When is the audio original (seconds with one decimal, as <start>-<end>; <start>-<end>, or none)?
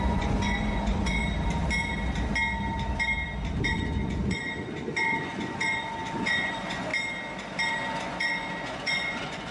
1.2-3.6; 6.9-7.7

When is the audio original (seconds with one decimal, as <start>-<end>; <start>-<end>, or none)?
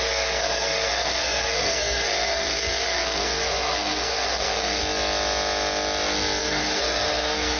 4.8-6.4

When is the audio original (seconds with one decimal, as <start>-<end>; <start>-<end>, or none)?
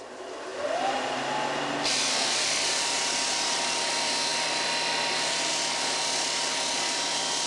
0.0-7.5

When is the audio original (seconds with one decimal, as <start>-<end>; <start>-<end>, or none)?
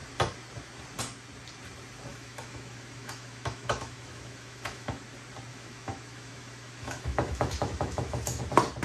0.0-2.1; 5.0-5.5; 8.4-8.8